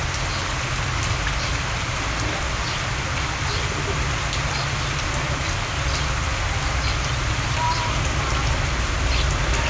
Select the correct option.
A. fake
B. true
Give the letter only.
B